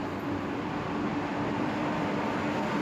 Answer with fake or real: real